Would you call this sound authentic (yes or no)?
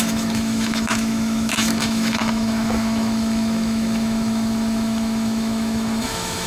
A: no